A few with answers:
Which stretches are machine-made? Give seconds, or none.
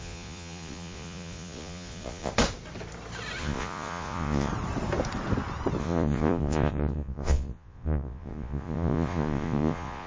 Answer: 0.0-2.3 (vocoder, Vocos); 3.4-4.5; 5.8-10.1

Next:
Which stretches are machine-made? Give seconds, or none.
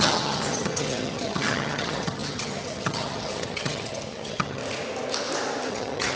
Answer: 0.0-4.6 (vocoder, HiFi-GAN); 5.7-6.2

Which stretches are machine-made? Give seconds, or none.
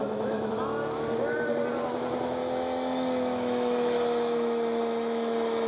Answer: 0.0-0.5 (autoencoder, DAC-VAE); 2.4-5.7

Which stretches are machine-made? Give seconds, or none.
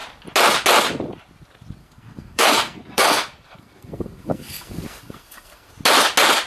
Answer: 1.8-5.7 (codec, SNAC)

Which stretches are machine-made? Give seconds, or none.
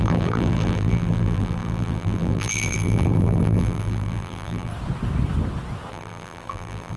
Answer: 0.0-4.7 (vocoder, BigVGAN v2); 5.9-7.0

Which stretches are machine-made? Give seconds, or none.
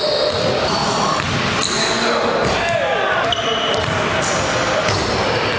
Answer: none